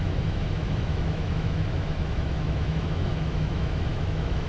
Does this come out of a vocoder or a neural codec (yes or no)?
yes